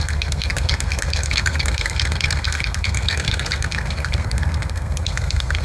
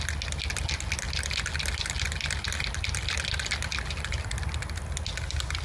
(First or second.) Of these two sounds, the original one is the second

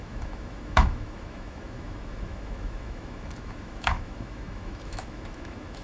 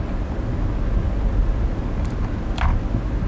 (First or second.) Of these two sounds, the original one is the second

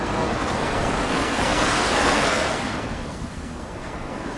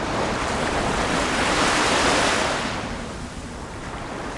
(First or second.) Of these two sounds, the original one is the second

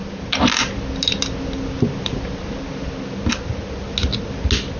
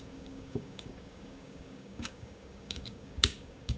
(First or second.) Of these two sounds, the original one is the first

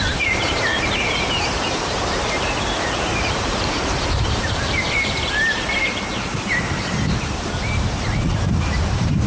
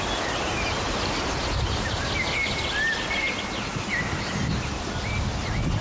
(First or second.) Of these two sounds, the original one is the second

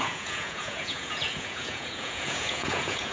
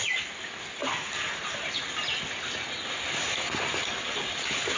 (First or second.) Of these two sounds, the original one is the second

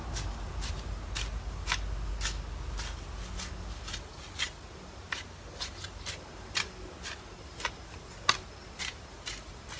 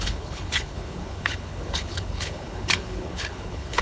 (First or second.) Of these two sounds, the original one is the first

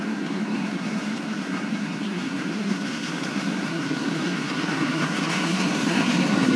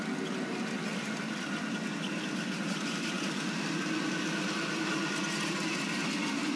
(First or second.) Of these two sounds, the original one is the second